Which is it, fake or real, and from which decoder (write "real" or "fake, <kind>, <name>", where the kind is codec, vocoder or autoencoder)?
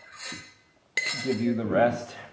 real